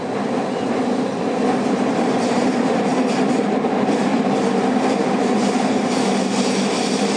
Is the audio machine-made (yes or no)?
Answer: no